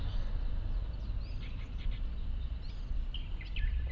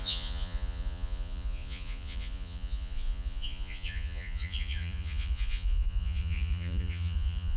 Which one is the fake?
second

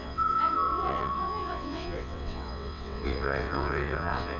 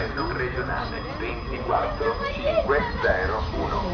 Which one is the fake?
first